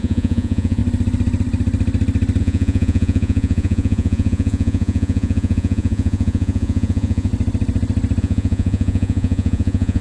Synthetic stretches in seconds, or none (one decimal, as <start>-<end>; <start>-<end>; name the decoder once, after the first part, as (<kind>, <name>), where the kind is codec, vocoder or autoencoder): 0.0-0.8 (vocoder, Vocos); 2.4-7.3; 8.2-10.0